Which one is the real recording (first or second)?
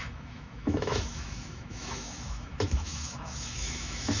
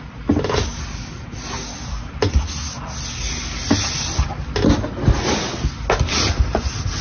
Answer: second